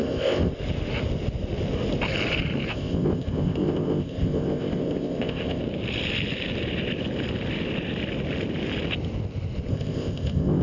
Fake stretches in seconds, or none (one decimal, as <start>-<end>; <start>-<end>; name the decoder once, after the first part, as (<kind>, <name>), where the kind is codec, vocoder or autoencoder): 0.0-0.5 (codec, ZipCodec); 2.7-5.6; 9.7-10.6